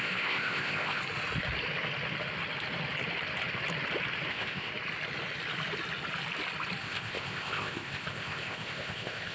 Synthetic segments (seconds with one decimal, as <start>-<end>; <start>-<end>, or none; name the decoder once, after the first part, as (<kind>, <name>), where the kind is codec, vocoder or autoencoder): 0.0-1.0 (codec, ZipCodec); 4.3-4.7; 6.8-9.3